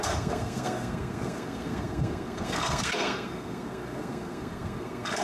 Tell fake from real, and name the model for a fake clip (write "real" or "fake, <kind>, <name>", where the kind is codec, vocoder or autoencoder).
fake, codec, SNAC